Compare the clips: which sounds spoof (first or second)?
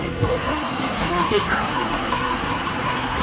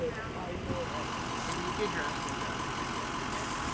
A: first